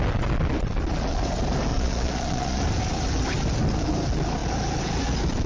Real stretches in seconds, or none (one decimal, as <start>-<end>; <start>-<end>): 0.0-1.7; 2.6-5.5

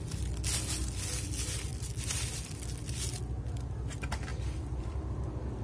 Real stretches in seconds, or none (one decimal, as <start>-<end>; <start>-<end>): 0.0-5.6